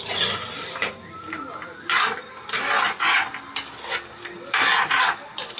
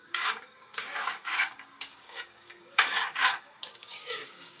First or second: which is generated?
second